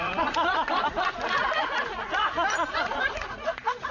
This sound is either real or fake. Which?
fake